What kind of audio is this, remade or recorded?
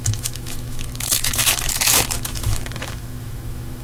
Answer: remade